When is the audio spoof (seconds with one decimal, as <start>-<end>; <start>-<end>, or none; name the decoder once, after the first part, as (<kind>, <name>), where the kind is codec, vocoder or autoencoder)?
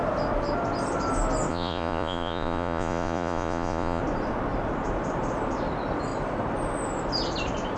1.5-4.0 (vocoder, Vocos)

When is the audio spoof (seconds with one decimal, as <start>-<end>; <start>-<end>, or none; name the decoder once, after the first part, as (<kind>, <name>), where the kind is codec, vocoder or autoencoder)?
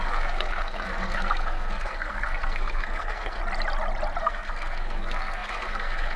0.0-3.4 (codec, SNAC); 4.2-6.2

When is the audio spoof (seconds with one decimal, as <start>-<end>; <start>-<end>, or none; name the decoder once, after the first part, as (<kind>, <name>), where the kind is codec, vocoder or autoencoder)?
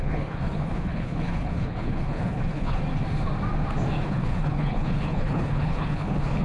0.0-2.8 (codec, HILCodec); 4.0-6.4